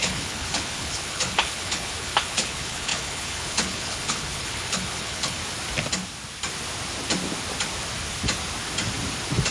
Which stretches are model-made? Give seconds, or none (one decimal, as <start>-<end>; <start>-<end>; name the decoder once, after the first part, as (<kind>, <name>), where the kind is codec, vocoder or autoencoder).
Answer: 0.0-5.4 (codec, HILCodec)